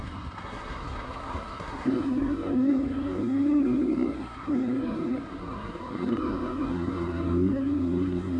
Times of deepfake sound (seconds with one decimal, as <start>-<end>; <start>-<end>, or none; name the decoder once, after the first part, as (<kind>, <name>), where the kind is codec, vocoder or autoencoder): 0.0-8.4 (codec, SNAC)